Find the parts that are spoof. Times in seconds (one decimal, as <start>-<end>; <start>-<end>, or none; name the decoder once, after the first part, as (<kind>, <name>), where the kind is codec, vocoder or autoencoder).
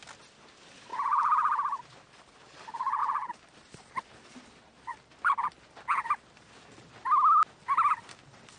none